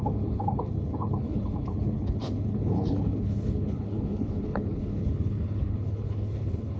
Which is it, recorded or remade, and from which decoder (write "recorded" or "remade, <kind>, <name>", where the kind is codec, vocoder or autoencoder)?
remade, codec, HILCodec